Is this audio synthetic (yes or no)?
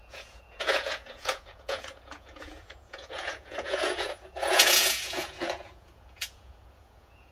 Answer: yes